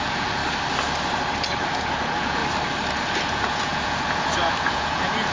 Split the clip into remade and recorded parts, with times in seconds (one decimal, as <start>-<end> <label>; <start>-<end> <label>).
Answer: 0.0-0.4 remade; 0.4-1.7 recorded; 1.7-2.4 remade; 2.4-3.0 recorded; 3.0-5.3 remade